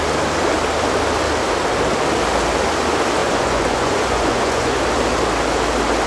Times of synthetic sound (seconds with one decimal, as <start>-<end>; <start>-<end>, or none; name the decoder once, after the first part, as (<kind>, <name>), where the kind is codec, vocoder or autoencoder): 3.2-4.8 (vocoder, Vocos)